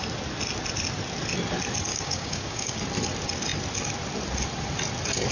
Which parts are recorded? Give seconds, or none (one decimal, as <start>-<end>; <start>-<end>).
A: 0.0-1.9; 2.8-5.3